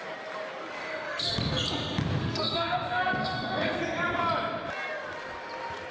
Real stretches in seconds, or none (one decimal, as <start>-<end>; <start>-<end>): 0.0-0.8; 1.3-2.2; 3.8-5.9